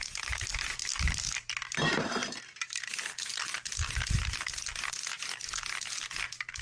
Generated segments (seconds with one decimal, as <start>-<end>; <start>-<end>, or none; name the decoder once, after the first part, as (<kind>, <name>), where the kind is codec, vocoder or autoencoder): 0.0-2.2 (vocoder, BigVGAN v2)